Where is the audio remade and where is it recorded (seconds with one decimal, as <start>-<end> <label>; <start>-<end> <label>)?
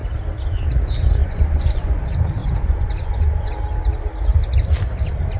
0.0-1.2 recorded; 1.2-2.0 remade; 2.0-2.4 recorded; 2.4-3.5 remade; 3.5-5.4 recorded